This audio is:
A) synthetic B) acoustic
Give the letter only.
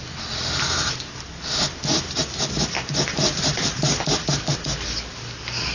B